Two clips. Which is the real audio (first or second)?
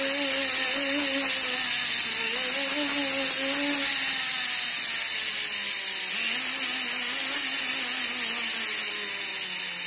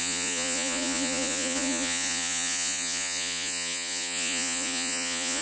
first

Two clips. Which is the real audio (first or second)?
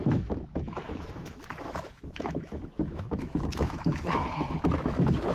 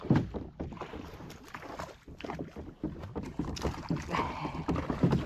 second